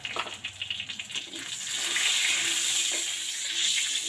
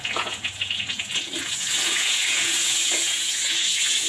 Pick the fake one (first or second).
second